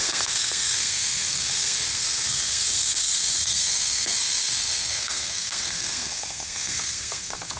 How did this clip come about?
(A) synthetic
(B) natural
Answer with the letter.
A